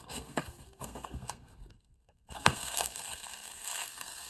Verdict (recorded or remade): remade